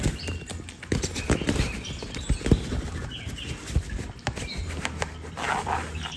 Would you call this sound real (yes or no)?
yes